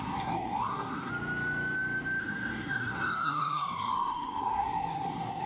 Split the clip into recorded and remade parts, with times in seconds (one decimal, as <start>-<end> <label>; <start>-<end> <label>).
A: 0.0-1.1 remade; 1.1-2.2 recorded; 2.2-5.5 remade